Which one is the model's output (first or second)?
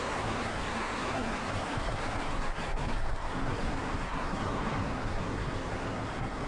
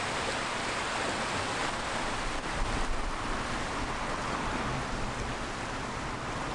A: first